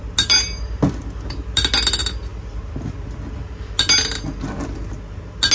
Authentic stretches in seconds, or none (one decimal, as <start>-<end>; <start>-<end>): 0.0-5.5